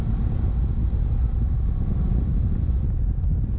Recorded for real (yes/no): yes